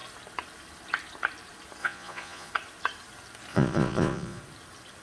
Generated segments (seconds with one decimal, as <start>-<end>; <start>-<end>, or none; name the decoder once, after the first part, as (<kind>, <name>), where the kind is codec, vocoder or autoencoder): 1.8-2.5 (vocoder, Vocos); 3.5-4.4